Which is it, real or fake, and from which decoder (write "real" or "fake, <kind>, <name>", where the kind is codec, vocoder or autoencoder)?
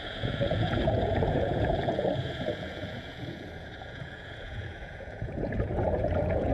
fake, vocoder, Vocos